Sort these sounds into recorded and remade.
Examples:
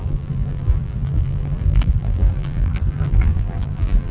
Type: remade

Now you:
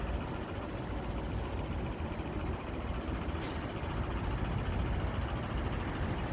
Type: recorded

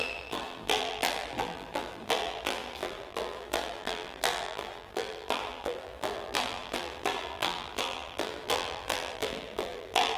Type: remade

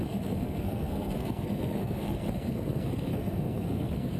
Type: remade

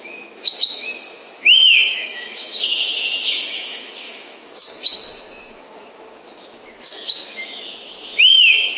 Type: remade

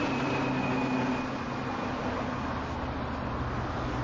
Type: recorded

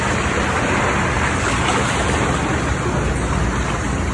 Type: recorded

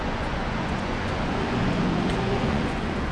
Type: remade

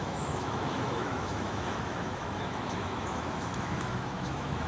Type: remade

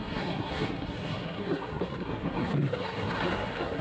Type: remade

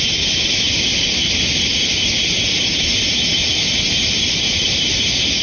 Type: recorded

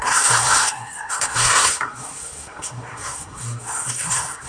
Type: remade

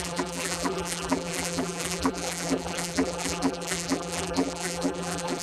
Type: remade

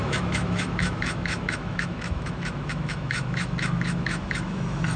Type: remade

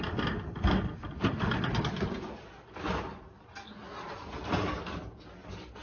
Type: recorded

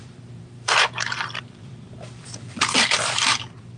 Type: remade